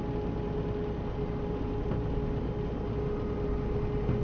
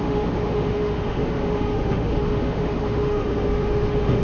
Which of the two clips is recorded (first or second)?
first